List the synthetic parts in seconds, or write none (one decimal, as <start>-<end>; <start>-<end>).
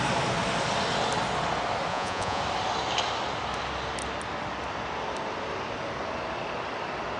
1.9-2.4